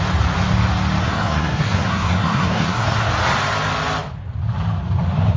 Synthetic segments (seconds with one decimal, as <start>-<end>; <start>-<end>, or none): 1.0-3.1